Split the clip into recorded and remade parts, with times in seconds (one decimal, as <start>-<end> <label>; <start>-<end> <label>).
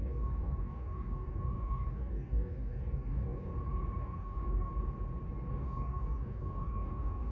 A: 0.0-3.5 remade; 3.5-4.0 recorded; 4.0-4.7 remade; 4.7-5.5 recorded; 5.5-7.3 remade